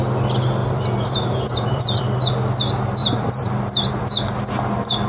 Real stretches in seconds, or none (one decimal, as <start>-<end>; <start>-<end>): 0.0-0.6; 2.0-3.0; 3.9-5.1